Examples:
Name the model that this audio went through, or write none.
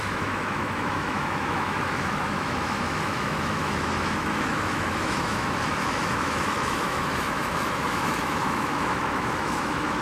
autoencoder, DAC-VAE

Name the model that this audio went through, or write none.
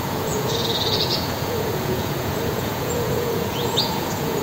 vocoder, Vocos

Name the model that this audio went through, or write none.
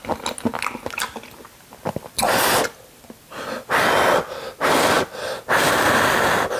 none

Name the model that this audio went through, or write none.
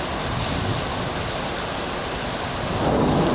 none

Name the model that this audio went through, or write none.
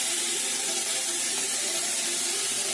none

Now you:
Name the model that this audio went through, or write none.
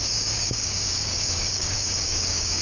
codec, DAC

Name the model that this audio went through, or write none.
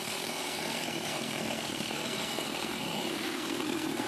codec, SNAC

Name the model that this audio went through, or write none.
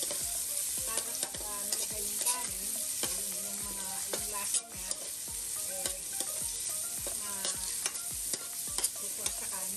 none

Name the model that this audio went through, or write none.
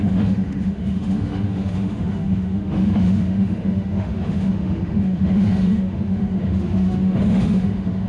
autoencoder, DAC-VAE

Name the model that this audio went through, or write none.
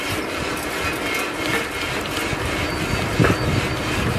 none